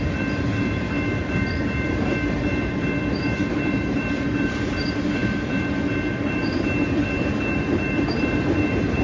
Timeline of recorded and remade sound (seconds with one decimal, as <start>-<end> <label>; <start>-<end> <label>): 0.0-9.0 remade